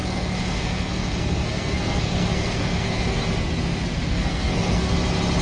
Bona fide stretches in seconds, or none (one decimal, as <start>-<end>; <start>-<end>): 3.2-4.1; 4.9-5.4